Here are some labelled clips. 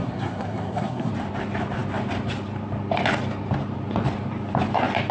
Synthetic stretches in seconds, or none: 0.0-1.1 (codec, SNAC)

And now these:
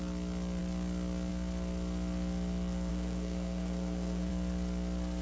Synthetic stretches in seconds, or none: 2.9-4.3 (codec, SNAC)